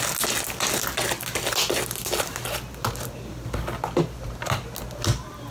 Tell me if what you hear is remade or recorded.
recorded